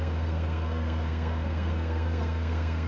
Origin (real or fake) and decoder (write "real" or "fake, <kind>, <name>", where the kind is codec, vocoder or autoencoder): fake, codec, SNAC